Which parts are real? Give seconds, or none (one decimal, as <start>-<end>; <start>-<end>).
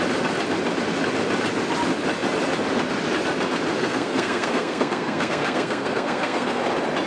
0.0-3.8; 6.6-7.1